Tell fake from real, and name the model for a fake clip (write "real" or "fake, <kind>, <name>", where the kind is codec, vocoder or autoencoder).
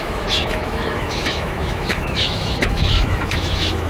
fake, autoencoder, DAC-VAE